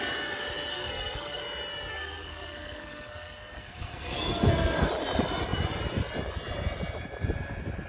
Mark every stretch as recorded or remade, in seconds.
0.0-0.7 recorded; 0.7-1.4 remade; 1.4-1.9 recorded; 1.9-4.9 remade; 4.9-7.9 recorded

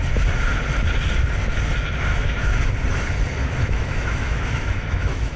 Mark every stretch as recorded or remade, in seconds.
0.0-2.1 recorded; 2.1-2.7 remade; 2.7-3.4 recorded; 3.4-5.4 remade

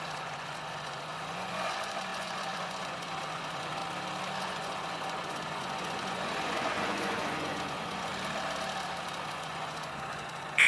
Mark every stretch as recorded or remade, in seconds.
0.0-3.8 remade; 3.8-4.4 recorded; 4.4-8.1 remade; 8.1-9.2 recorded; 9.2-10.7 remade

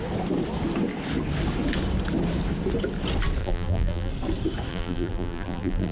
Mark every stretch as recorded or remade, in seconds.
0.0-3.4 recorded; 3.4-4.1 remade; 4.1-4.7 recorded; 4.7-5.9 remade